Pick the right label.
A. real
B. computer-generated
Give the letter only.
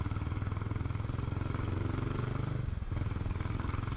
A